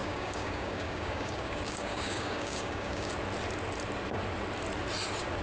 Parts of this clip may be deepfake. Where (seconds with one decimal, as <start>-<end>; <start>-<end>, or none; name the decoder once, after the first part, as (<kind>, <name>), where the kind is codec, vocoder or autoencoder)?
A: 0.0-3.1 (codec, DAC)